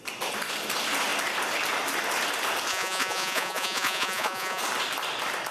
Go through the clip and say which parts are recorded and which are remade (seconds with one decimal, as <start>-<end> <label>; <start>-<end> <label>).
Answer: 0.0-2.7 recorded; 2.7-4.6 remade; 4.6-5.5 recorded